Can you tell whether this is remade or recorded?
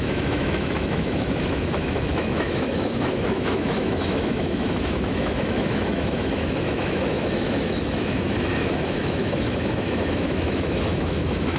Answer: remade